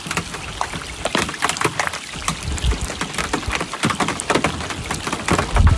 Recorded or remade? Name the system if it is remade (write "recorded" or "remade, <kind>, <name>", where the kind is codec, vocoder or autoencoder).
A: recorded